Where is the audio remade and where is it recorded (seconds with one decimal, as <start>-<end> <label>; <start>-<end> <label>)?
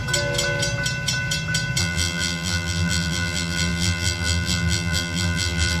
0.0-1.8 recorded; 1.8-5.8 remade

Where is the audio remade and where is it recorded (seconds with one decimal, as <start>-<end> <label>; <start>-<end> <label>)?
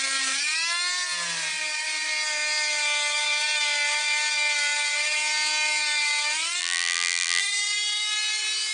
0.0-6.6 recorded; 6.6-7.4 remade; 7.4-8.7 recorded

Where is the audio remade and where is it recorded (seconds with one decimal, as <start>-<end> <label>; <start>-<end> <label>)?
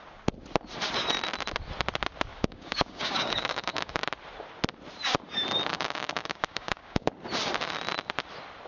0.0-2.3 recorded; 2.3-4.0 remade; 4.0-5.7 recorded; 5.7-7.1 remade; 7.1-8.7 recorded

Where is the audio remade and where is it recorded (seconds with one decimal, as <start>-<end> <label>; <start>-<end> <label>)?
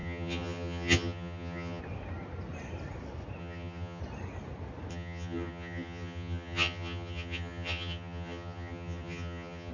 0.0-1.8 remade; 1.8-3.4 recorded; 3.4-4.0 remade; 4.0-4.9 recorded; 4.9-9.7 remade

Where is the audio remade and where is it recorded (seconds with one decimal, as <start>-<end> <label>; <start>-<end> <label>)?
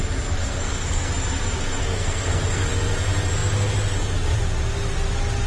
0.0-0.4 recorded; 0.4-1.1 remade; 1.1-1.8 recorded; 1.8-2.7 remade; 2.7-5.5 recorded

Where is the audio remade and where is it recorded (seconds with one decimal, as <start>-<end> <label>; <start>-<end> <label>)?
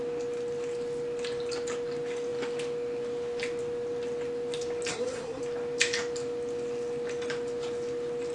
0.0-4.9 recorded; 4.9-5.4 remade; 5.4-8.3 recorded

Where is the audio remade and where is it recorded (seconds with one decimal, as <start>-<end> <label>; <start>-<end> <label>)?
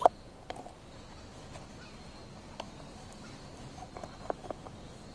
0.0-5.1 recorded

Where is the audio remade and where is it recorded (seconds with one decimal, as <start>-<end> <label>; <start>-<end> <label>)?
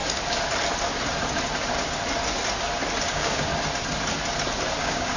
0.0-3.1 recorded; 3.1-3.5 remade; 3.5-4.8 recorded; 4.8-5.2 remade